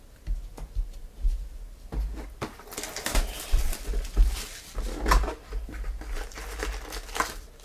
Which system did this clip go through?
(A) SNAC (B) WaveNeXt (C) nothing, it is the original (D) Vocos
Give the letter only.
C